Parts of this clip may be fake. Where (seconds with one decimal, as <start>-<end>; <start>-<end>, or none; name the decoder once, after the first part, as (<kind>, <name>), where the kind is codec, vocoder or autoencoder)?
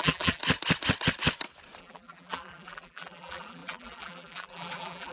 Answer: 0.0-0.4 (vocoder, BigVGAN v2); 1.8-5.1